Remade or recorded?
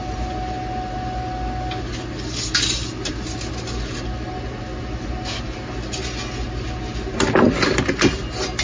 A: recorded